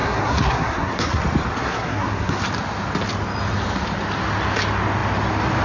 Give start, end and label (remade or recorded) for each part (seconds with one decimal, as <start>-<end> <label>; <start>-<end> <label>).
0.0-1.2 remade; 1.2-1.6 recorded; 1.6-2.4 remade; 2.4-5.6 recorded